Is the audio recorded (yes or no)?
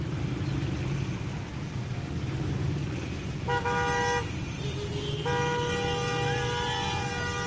yes